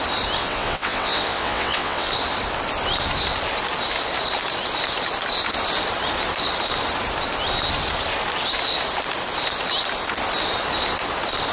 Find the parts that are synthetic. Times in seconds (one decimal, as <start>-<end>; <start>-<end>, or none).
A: 0.4-2.1